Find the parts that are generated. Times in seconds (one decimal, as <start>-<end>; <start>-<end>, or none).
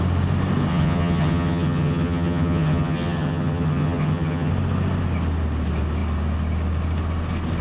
0.7-4.5